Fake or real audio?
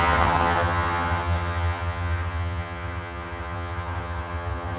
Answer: fake